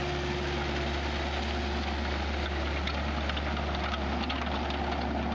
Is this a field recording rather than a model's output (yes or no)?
yes